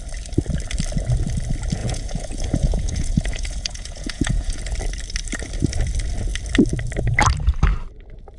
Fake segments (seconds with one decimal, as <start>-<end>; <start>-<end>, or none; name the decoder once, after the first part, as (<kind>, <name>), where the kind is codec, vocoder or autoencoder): 1.8-4.6 (vocoder, Vocos)